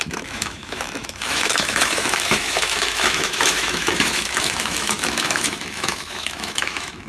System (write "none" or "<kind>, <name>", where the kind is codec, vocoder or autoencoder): autoencoder, DAC-VAE